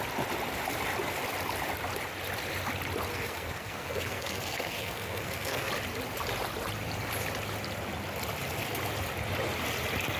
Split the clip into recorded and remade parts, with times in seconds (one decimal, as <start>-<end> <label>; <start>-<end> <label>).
0.0-3.1 recorded; 3.1-5.7 remade; 5.7-10.2 recorded